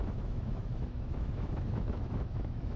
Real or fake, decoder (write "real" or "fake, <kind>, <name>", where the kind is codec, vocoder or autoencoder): fake, autoencoder, DAC-VAE